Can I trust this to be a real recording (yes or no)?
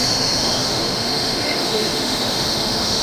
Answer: no